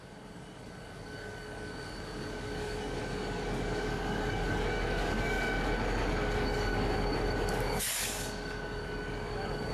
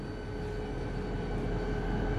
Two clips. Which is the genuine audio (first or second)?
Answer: second